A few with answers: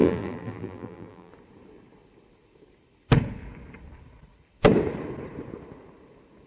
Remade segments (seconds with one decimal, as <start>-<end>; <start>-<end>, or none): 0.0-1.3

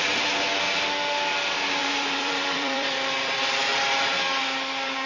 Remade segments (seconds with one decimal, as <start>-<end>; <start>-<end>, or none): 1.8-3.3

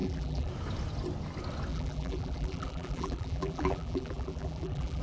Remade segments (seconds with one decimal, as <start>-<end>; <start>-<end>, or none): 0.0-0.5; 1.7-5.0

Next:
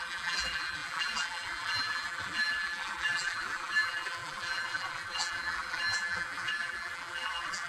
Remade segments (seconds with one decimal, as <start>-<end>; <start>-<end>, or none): 0.0-7.7